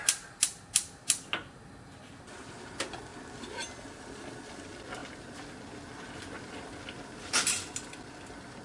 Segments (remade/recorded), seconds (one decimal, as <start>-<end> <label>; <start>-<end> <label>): 0.0-8.6 recorded